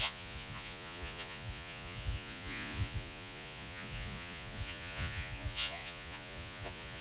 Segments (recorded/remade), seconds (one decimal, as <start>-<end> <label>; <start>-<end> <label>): 0.0-7.0 remade